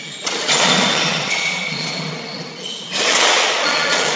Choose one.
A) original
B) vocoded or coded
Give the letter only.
B